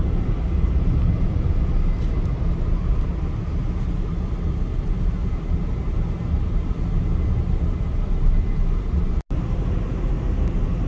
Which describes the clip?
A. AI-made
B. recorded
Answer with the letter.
B